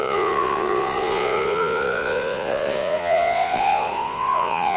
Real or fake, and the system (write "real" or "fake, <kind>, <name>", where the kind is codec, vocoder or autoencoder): fake, vocoder, Vocos